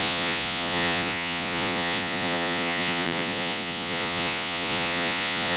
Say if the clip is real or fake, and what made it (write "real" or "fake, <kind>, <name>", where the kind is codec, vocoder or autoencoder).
fake, vocoder, Vocos